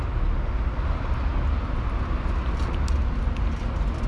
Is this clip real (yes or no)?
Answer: yes